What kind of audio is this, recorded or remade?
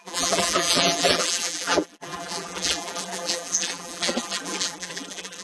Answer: remade